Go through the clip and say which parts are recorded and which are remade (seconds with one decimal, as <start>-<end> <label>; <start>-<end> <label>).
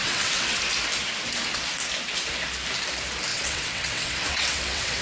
0.0-0.6 remade; 0.6-3.3 recorded; 3.3-5.0 remade